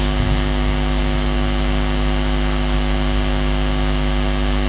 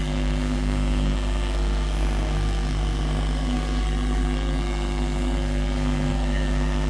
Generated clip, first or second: second